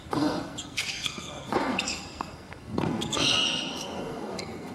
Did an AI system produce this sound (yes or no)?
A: yes